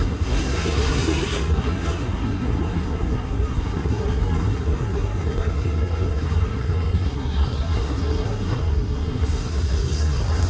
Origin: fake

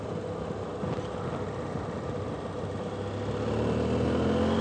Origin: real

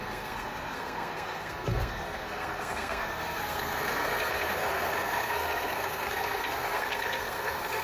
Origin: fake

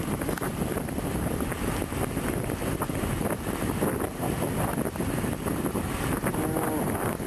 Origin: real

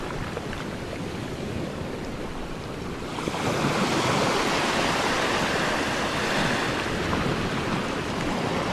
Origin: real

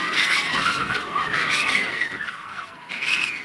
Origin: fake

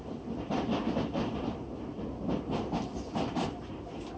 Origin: real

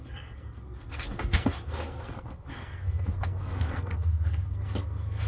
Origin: fake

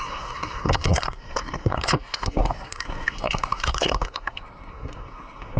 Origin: fake